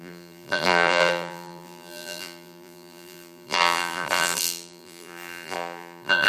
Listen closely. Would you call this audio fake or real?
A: fake